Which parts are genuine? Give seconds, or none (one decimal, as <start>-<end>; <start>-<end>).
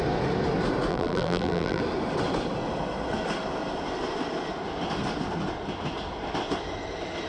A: 0.0-0.9; 1.8-7.3